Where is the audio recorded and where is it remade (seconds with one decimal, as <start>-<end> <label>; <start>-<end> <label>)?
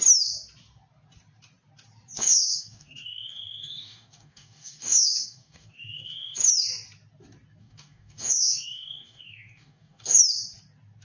0.0-2.2 recorded; 2.2-6.4 remade; 6.4-7.6 recorded; 7.6-10.2 remade; 10.2-11.0 recorded